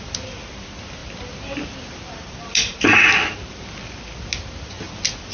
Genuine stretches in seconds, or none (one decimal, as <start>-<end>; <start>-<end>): 0.0-5.3